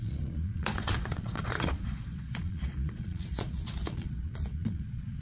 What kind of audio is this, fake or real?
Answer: fake